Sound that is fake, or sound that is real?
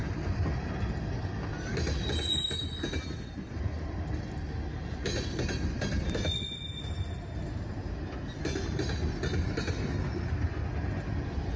real